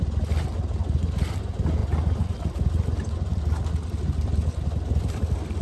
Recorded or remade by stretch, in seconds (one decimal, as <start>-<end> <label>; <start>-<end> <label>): 0.0-5.6 recorded